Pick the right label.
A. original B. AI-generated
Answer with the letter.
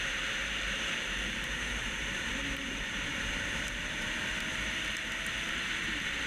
B